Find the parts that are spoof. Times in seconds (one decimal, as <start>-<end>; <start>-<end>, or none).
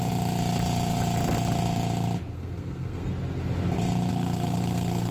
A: 2.3-3.1; 4.1-5.1